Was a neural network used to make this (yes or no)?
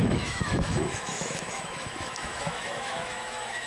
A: yes